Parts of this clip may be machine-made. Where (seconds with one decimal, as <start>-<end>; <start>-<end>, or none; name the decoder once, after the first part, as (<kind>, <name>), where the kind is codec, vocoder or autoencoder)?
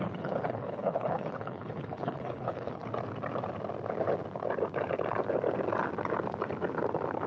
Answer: 0.0-2.8 (codec, HILCodec)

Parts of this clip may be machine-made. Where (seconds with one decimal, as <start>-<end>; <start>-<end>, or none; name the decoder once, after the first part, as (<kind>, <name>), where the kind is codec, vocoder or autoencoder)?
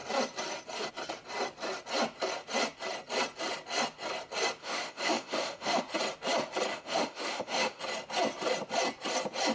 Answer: 4.6-5.8 (autoencoder, DAC-VAE); 6.7-7.8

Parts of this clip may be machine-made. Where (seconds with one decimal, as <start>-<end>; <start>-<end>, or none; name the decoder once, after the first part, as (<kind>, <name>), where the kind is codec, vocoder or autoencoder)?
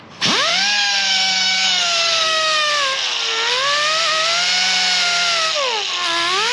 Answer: 0.5-2.7 (codec, DAC)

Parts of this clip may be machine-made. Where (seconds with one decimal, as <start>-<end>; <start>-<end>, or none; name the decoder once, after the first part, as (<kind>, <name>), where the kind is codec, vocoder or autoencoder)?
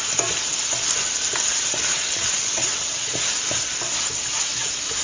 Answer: 1.9-3.1 (vocoder, WaveNeXt)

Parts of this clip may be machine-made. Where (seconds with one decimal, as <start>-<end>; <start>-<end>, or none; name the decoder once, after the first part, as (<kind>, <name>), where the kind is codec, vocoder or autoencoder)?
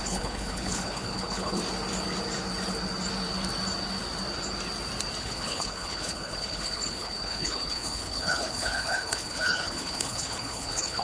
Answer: 0.0-1.6 (codec, HILCodec); 5.2-11.0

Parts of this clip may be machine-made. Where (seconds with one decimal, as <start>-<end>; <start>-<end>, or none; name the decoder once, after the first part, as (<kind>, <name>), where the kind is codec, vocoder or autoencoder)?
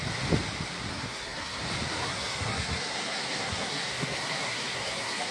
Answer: 0.9-1.6 (codec, SNAC); 2.0-5.3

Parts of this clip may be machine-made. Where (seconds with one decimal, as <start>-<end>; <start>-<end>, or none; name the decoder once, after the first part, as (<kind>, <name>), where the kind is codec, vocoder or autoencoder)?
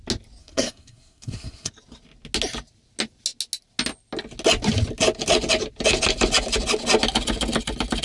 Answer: 0.4-1.7 (codec, SNAC)